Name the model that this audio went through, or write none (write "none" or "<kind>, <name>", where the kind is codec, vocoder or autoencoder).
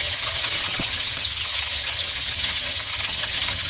vocoder, HiFi-GAN